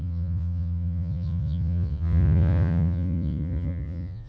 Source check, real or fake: fake